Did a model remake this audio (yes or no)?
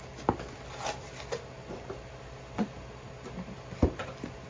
no